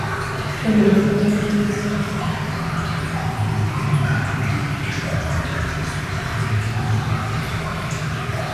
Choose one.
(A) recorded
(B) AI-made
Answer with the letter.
A